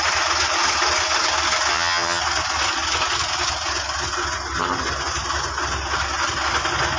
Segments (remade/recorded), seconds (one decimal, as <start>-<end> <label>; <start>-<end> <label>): 0.0-1.7 recorded; 1.7-2.2 remade; 2.2-7.0 recorded